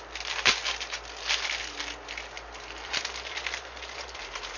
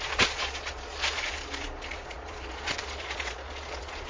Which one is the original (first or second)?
first